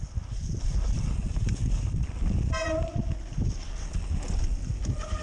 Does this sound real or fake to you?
real